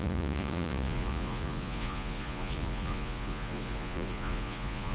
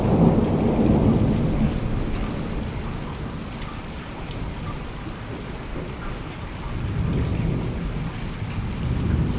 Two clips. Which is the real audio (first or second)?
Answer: second